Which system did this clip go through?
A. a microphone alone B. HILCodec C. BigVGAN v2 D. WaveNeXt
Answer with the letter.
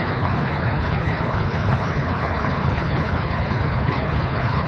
B